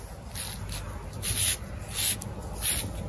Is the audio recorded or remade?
recorded